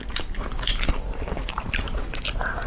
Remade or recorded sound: remade